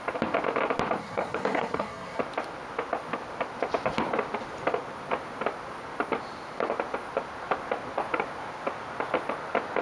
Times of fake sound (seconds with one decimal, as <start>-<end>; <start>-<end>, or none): 1.0-2.2